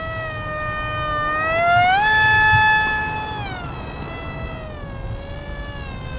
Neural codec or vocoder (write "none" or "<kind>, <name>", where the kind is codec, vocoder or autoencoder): none